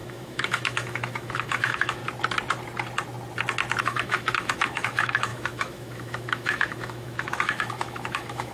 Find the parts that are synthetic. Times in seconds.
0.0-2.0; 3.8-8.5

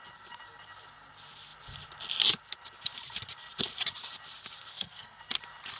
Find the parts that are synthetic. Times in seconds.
4.7-5.2

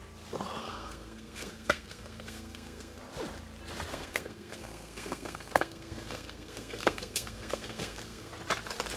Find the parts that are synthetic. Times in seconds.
0.6-3.0; 3.9-8.3

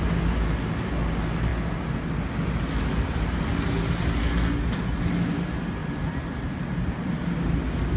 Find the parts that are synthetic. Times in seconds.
5.8-6.6

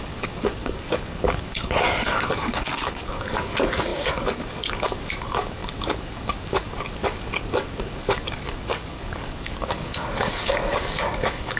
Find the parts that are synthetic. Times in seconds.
0.0-11.6